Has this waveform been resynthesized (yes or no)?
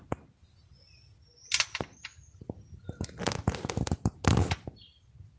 no